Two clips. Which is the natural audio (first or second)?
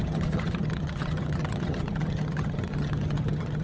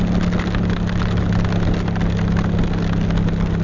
second